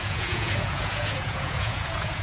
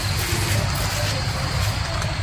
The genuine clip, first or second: second